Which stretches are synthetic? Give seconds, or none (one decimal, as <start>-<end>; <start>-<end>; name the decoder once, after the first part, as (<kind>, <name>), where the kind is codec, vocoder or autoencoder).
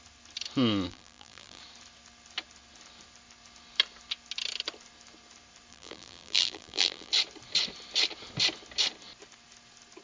0.9-1.6 (vocoder, BigVGAN v2); 5.7-7.1